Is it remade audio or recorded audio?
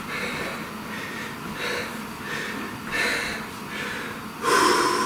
recorded